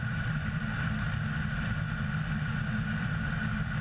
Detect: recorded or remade recorded